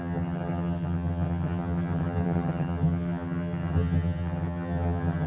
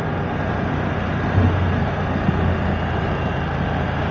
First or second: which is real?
second